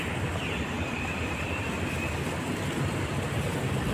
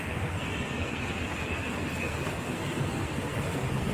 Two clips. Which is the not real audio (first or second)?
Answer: second